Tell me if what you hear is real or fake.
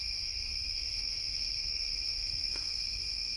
fake